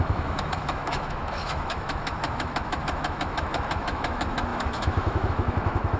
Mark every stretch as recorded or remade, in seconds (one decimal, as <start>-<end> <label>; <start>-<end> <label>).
0.0-6.0 remade